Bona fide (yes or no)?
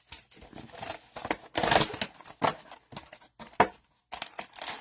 yes